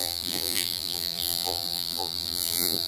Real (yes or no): no